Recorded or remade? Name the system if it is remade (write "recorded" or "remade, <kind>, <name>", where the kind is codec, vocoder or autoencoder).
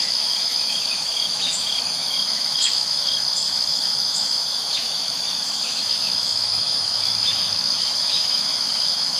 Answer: remade, autoencoder, DAC-VAE